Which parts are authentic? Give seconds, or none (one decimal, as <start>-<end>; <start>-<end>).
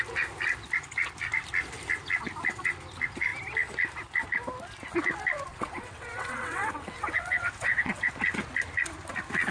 0.0-5.5; 8.1-9.5